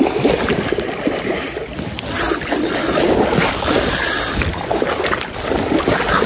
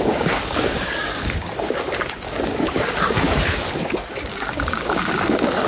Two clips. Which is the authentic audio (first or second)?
first